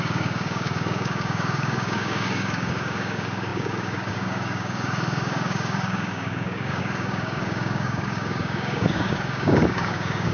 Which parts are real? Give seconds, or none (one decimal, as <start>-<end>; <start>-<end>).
none